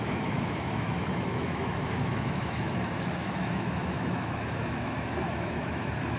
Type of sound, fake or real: fake